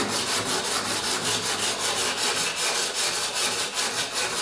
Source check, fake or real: real